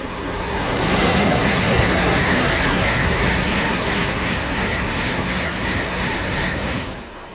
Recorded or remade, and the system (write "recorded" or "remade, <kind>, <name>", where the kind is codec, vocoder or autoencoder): remade, codec, SNAC